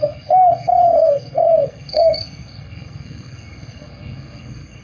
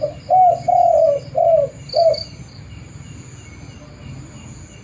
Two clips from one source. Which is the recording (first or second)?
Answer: second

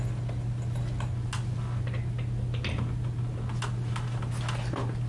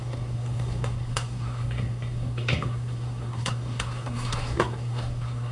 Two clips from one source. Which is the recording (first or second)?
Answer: first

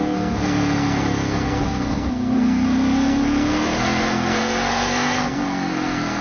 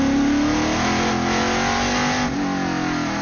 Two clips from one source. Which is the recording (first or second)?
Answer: second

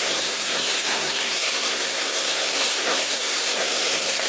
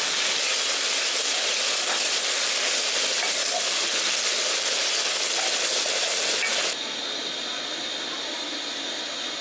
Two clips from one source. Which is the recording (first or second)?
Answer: second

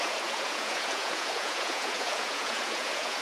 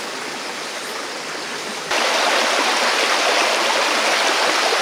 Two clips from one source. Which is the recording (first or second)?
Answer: second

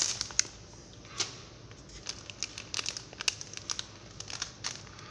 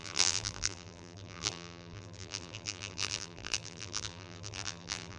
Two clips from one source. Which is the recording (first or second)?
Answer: first